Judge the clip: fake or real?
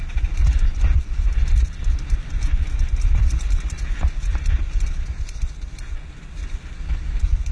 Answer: real